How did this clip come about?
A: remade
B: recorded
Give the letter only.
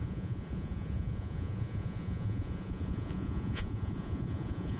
A